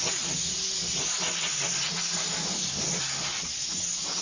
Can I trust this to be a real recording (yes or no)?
yes